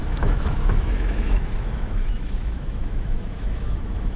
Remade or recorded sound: remade